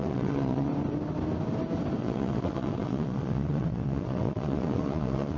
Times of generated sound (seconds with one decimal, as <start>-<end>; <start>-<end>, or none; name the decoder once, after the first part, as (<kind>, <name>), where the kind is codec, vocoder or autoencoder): 0.0-0.7 (vocoder, WaveNeXt); 2.0-5.4